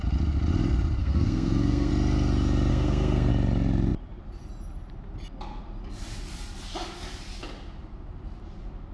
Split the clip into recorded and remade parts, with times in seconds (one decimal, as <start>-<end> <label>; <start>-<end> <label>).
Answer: 0.0-1.0 recorded; 1.0-1.9 remade; 1.9-2.7 recorded; 2.7-3.3 remade; 3.3-8.9 recorded